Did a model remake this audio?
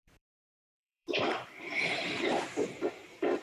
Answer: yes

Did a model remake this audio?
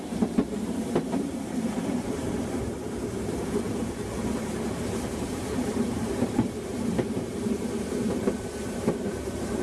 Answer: yes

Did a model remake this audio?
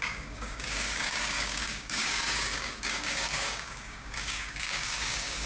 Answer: yes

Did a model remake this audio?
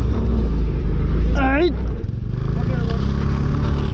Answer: no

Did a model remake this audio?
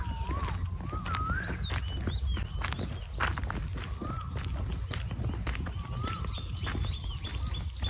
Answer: no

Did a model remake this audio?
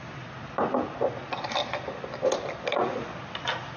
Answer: no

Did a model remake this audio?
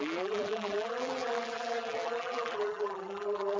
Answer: yes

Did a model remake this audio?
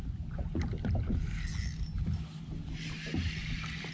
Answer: no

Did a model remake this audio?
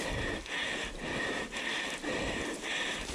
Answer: no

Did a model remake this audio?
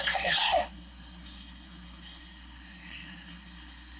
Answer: yes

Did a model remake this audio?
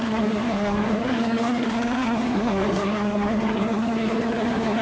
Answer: yes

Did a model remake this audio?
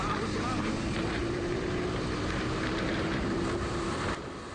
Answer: yes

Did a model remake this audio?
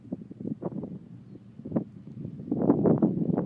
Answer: no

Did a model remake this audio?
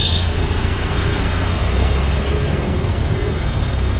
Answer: yes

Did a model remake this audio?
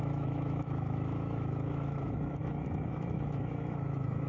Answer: yes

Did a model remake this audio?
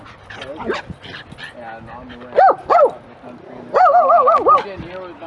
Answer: no